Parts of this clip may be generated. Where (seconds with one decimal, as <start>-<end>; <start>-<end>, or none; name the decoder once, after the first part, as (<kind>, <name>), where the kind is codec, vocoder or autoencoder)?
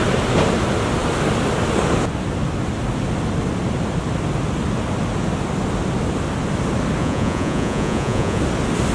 7.0-8.4 (vocoder, Vocos)